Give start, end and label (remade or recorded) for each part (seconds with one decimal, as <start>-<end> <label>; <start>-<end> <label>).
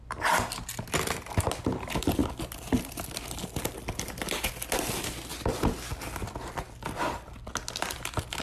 0.0-8.4 recorded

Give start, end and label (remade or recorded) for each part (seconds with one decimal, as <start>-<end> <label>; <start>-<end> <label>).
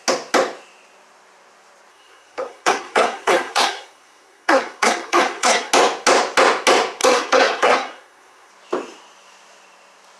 0.0-1.9 recorded; 1.9-5.7 remade; 5.7-7.0 recorded; 7.0-8.5 remade; 8.5-10.2 recorded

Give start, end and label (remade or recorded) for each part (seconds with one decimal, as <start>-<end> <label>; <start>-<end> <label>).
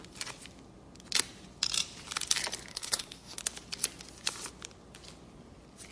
0.0-2.7 recorded; 2.7-3.4 remade; 3.4-5.9 recorded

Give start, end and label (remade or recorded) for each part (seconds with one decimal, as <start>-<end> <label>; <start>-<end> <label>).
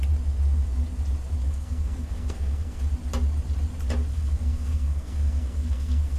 0.0-1.4 recorded; 1.4-2.8 remade; 2.8-4.1 recorded; 4.1-6.2 remade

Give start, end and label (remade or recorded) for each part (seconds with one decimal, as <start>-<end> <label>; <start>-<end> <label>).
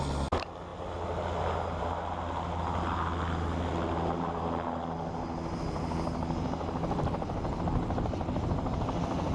0.0-9.3 recorded